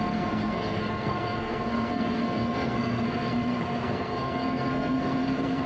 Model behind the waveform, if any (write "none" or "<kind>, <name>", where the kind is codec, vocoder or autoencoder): codec, SNAC